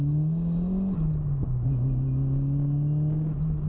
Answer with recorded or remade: recorded